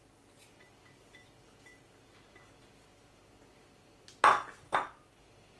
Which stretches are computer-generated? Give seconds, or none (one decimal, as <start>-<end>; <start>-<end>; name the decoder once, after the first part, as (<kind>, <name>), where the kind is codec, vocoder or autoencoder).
none